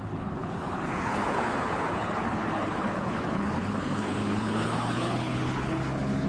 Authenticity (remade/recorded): remade